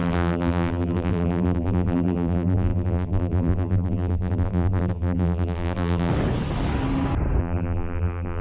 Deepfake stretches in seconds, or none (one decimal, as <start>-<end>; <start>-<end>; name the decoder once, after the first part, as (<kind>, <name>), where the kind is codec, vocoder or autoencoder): 0.0-6.1 (vocoder, BigVGAN v2); 7.4-8.4